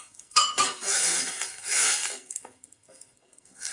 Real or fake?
fake